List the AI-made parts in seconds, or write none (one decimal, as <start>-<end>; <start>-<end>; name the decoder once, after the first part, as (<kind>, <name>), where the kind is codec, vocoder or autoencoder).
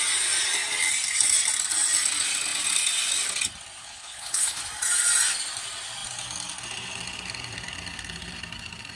3.8-4.6 (codec, HILCodec)